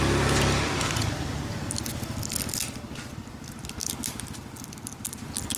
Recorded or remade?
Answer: recorded